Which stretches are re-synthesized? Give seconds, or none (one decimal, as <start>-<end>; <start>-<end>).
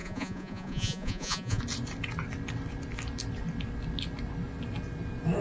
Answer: 0.0-1.6